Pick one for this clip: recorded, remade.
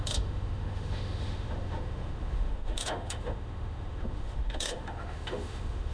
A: remade